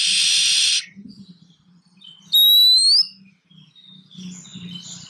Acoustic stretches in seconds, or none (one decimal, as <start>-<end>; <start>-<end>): 0.0-5.1